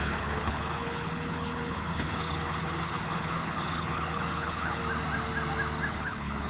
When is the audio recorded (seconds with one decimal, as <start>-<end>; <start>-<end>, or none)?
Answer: 4.8-5.9